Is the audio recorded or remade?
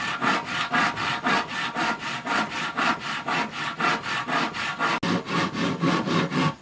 recorded